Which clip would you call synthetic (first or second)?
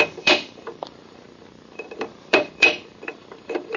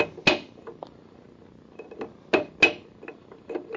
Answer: first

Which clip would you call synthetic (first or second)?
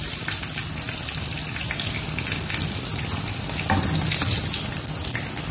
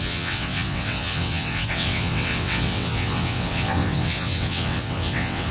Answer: second